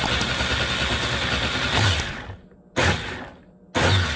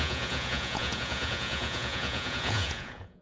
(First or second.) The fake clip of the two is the second